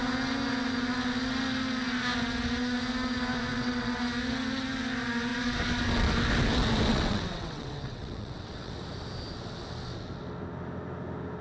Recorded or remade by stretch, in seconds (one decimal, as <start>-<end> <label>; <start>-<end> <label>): 0.0-3.5 recorded; 3.5-4.0 remade; 4.0-6.9 recorded; 6.9-8.7 remade; 8.7-11.4 recorded